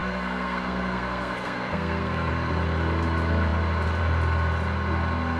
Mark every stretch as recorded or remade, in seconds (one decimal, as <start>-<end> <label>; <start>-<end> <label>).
0.0-2.3 remade; 2.3-5.4 recorded